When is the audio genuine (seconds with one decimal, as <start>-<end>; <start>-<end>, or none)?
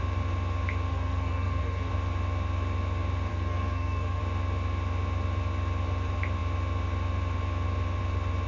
0.0-0.9; 1.9-3.3; 4.2-8.5